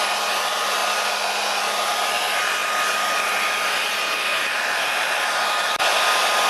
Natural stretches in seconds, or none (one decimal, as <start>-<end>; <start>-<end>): 0.0-2.6; 3.3-4.3; 5.8-6.5